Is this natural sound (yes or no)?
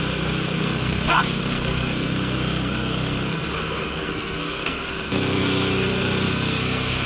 no